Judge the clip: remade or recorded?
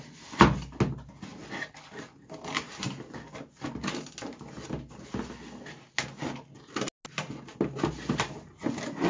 recorded